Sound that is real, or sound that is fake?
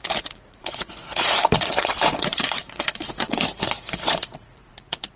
fake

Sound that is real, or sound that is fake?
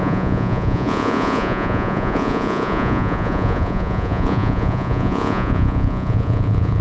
fake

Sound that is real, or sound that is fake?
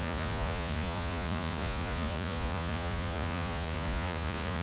fake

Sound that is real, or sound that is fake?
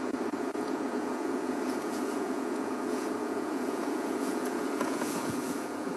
fake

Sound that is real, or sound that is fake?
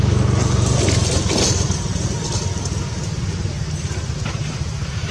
real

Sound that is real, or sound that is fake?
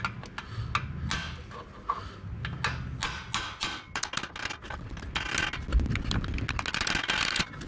real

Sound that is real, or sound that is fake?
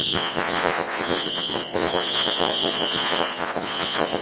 fake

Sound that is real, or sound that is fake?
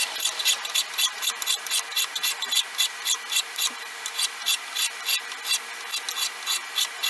real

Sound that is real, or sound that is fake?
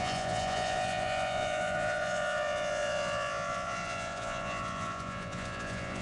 fake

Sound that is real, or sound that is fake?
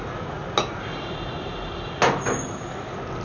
real